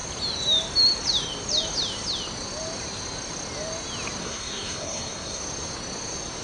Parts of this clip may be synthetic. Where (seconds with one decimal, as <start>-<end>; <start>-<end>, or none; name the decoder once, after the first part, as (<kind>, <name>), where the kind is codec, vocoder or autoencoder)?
4.2-5.4 (codec, SNAC)